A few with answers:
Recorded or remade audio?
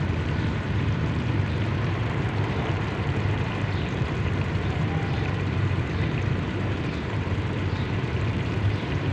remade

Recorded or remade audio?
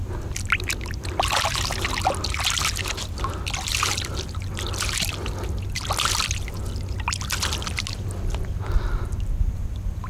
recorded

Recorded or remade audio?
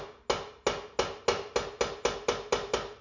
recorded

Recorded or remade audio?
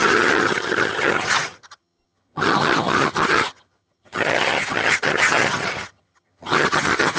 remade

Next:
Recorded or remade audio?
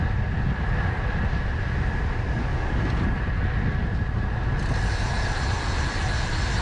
recorded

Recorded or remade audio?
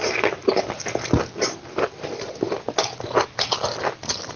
recorded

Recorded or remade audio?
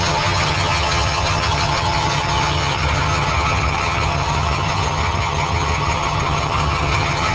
remade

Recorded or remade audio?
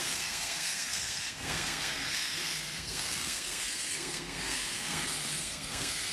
remade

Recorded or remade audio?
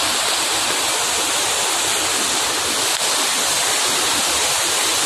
recorded